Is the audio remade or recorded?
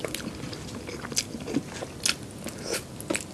recorded